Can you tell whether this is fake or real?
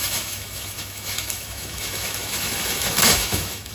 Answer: fake